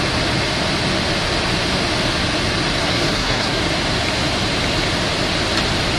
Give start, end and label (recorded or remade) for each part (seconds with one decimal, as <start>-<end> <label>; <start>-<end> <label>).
0.0-2.8 recorded; 2.8-3.6 remade; 3.6-6.0 recorded